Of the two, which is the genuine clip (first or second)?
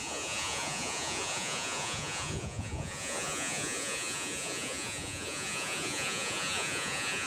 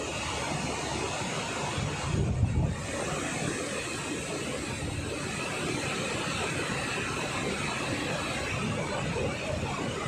second